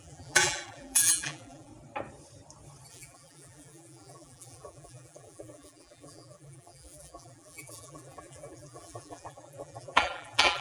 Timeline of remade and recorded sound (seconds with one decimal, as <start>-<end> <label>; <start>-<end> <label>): 0.0-1.7 remade; 1.7-2.9 recorded; 2.9-10.6 remade